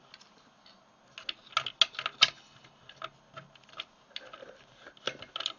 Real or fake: real